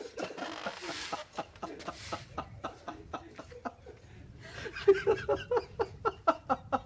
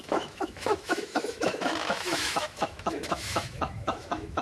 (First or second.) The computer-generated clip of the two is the second